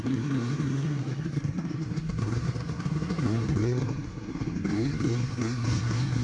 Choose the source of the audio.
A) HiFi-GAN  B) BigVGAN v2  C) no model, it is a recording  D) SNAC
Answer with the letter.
D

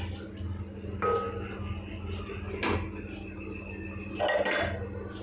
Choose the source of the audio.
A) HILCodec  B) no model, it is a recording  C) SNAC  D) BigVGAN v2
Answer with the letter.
B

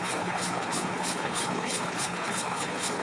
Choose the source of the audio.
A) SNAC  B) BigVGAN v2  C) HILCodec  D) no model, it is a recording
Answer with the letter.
C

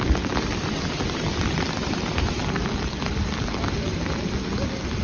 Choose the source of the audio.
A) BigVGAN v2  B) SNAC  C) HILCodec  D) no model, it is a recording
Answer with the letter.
D